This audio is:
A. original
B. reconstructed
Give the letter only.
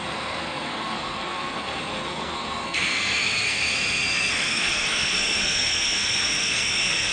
B